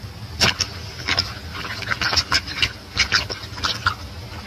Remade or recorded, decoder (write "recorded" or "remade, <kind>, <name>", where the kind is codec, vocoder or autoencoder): recorded